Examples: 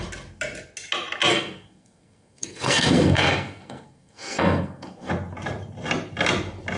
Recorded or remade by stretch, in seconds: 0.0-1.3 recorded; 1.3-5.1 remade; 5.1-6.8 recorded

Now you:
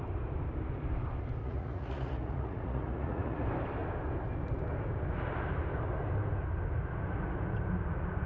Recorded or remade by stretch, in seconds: 0.0-1.4 recorded; 1.4-3.4 remade; 3.4-8.3 recorded

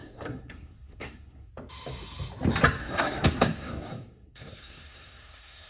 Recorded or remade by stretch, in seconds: 0.0-1.5 remade; 1.5-2.8 recorded; 2.8-5.7 remade

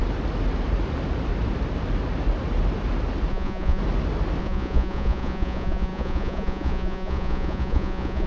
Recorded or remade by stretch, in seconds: 0.0-3.3 recorded; 3.3-3.8 remade; 3.8-4.4 recorded; 4.4-8.3 remade

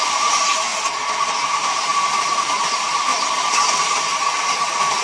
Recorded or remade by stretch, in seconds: 0.0-0.7 remade; 0.7-1.5 recorded; 1.5-3.1 remade; 3.1-3.9 recorded; 3.9-5.0 remade

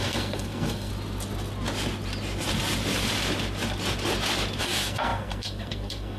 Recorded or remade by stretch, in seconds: 0.0-0.9 remade; 0.9-4.6 recorded; 4.6-6.2 remade